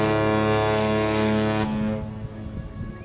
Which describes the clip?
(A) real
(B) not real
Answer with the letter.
A